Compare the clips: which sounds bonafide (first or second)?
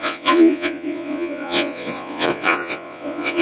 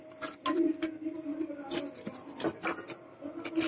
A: second